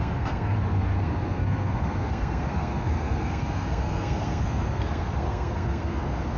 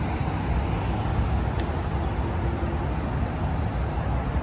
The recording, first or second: second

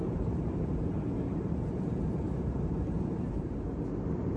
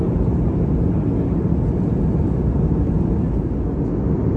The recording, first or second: second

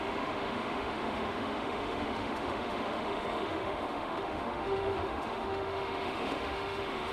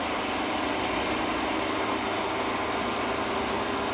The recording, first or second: second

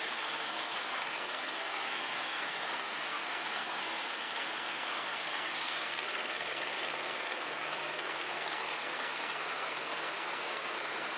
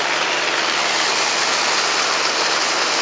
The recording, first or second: second